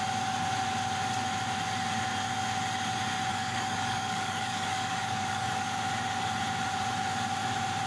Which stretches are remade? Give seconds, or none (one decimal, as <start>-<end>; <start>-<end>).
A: 3.3-5.8